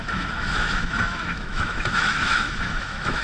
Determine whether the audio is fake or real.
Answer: fake